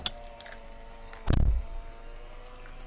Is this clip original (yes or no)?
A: yes